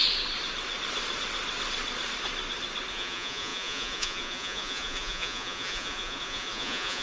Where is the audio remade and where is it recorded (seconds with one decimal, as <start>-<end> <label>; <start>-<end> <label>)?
0.0-2.9 recorded; 2.9-7.0 remade